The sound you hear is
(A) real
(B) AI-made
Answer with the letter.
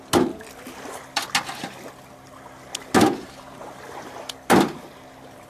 A